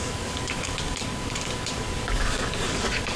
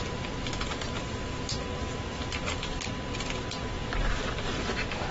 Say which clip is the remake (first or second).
first